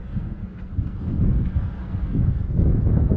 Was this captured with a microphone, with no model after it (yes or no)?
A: no